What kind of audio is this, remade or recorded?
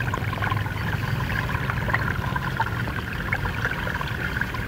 recorded